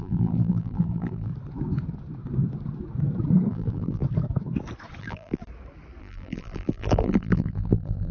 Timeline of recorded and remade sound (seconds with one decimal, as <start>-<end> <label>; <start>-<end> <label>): 0.0-1.3 remade; 1.3-3.5 recorded; 3.5-4.0 remade; 4.0-5.0 recorded; 5.0-5.4 remade; 5.4-6.0 recorded; 6.0-8.1 remade

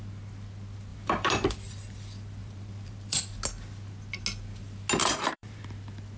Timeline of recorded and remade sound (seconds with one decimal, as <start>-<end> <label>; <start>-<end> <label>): 0.0-0.9 recorded; 0.9-1.5 remade; 1.5-2.4 recorded; 2.4-3.2 remade; 3.2-5.0 recorded; 5.0-5.6 remade; 5.6-6.2 recorded

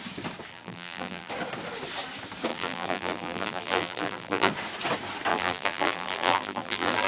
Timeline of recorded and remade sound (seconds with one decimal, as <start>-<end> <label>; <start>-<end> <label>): 0.0-0.5 recorded; 0.5-1.3 remade; 1.3-2.5 recorded; 2.5-4.5 remade; 4.5-5.3 recorded; 5.3-7.1 remade

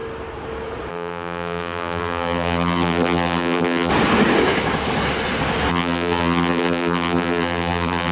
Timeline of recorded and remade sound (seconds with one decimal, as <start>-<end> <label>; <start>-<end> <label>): 0.0-0.9 recorded; 0.9-3.9 remade; 3.9-5.7 recorded; 5.7-8.1 remade

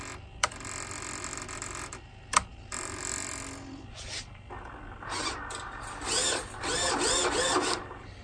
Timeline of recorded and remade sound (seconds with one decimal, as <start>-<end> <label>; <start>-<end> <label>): 0.0-8.2 recorded

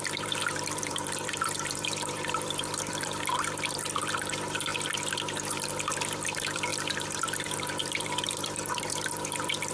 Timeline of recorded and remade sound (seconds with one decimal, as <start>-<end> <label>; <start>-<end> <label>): 0.0-4.7 remade; 4.7-6.0 recorded; 6.0-9.7 remade